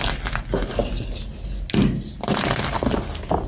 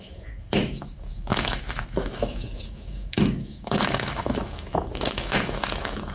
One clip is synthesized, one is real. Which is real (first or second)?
first